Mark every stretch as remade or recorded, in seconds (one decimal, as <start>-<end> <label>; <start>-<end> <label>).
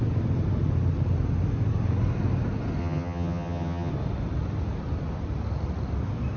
0.0-2.8 recorded; 2.8-3.9 remade; 3.9-6.4 recorded